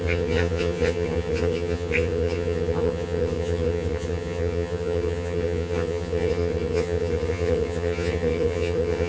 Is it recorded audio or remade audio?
remade